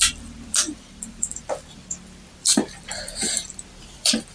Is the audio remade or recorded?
remade